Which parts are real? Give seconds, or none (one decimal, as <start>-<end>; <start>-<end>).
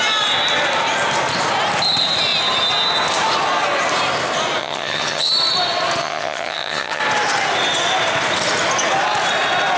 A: 0.0-4.6; 5.3-6.0; 7.0-9.8